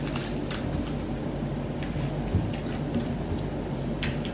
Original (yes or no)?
yes